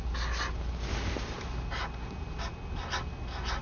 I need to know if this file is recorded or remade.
recorded